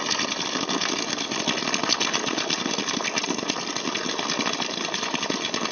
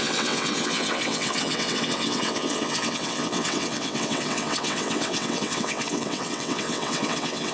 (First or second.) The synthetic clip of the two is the second